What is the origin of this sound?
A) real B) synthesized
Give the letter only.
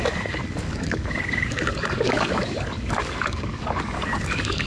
B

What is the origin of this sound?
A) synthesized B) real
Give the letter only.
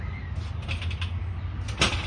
B